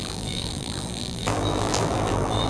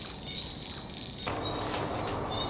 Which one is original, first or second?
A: second